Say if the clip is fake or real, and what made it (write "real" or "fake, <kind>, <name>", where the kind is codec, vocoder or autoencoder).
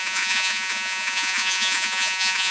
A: fake, vocoder, Vocos